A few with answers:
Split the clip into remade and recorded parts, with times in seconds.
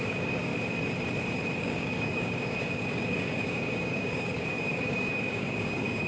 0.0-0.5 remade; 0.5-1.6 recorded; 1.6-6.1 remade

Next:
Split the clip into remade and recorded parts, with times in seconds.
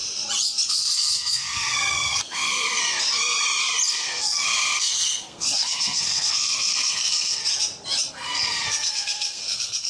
0.0-0.7 recorded; 0.7-2.8 remade; 2.8-3.9 recorded; 3.9-7.4 remade; 7.4-8.1 recorded; 8.1-9.9 remade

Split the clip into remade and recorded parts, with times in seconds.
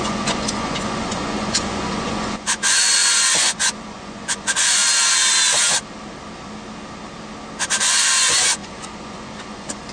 0.0-4.8 remade; 4.8-7.7 recorded; 7.7-9.9 remade